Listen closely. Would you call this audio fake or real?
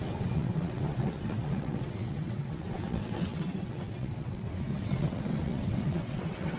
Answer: fake